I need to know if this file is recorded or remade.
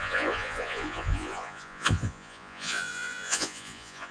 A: remade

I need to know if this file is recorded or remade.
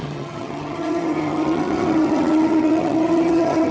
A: remade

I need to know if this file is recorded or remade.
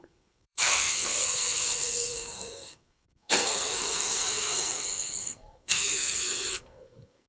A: remade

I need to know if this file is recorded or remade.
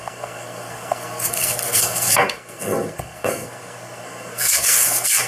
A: remade